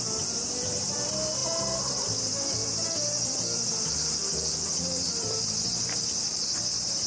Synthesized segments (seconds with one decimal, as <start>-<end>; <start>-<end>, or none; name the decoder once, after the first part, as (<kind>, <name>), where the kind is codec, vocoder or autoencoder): 0.0-7.1 (vocoder, BigVGAN v2)